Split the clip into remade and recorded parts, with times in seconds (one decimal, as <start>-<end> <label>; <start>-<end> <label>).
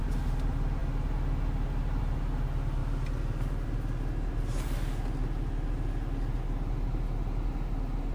0.0-8.1 recorded